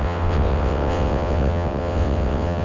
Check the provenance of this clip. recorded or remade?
remade